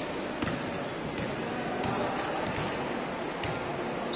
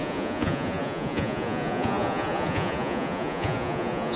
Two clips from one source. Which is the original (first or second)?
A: first